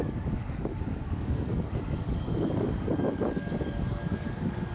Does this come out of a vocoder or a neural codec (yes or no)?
yes